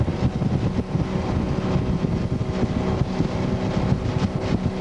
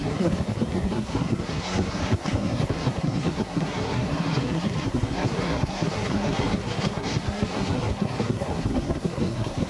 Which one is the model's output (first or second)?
second